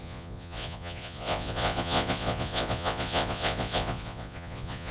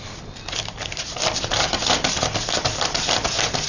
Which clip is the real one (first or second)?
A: second